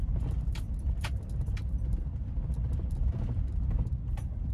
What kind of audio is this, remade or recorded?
recorded